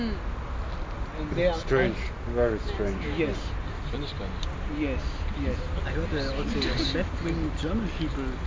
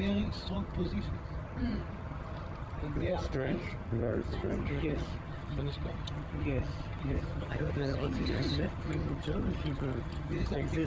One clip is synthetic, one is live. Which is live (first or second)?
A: first